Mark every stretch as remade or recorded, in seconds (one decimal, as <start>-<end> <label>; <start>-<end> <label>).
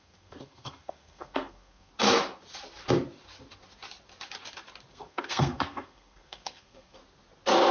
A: 0.0-1.9 remade; 1.9-4.9 recorded; 4.9-7.0 remade; 7.0-7.7 recorded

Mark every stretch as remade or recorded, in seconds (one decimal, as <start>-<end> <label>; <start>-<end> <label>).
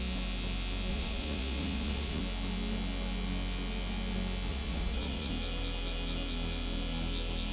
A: 0.0-0.9 recorded; 0.9-2.2 remade; 2.2-4.5 recorded; 4.5-5.3 remade; 5.3-7.5 recorded